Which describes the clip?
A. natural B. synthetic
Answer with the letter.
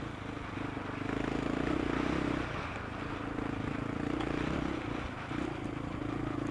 A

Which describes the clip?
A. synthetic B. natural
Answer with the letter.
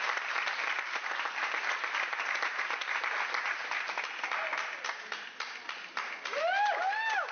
B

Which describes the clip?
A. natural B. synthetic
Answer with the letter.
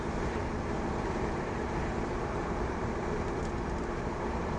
B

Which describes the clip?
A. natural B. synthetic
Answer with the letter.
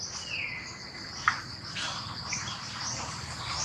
A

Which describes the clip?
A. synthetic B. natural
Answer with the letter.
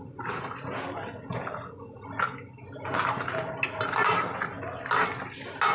B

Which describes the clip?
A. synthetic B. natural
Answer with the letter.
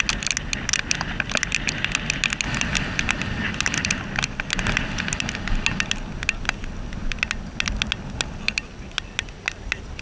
B